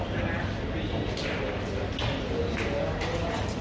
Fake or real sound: real